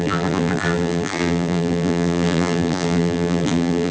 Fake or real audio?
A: fake